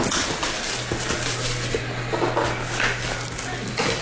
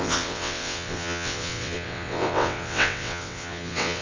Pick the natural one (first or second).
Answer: first